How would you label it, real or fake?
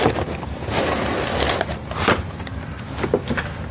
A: real